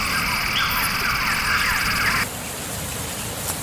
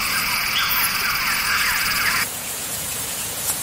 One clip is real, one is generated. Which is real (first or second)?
first